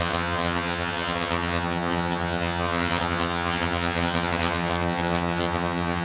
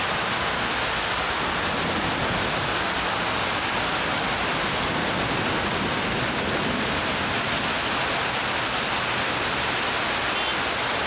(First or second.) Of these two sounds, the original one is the second